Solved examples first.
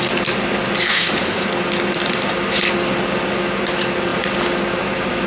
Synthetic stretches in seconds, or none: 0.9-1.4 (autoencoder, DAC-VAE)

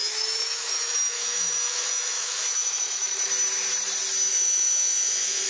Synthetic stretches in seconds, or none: 0.0-3.3 (autoencoder, DAC-VAE); 4.3-5.5

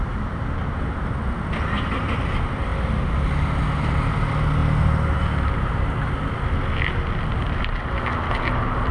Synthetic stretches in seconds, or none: none

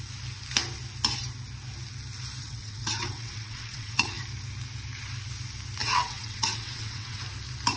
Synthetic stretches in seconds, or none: 2.4-4.2 (vocoder, WaveNeXt); 5.8-7.2

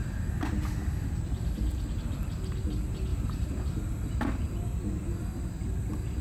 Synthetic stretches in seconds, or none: 0.0-0.5 (vocoder, BigVGAN v2); 3.1-4.2

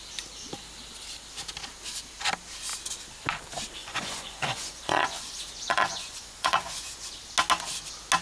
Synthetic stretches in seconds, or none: 3.8-7.1 (vocoder, Vocos)

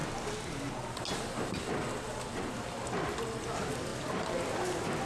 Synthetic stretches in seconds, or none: none

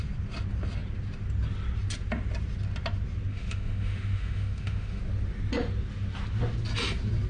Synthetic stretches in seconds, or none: 3.3-5.0 (autoencoder, DAC-VAE)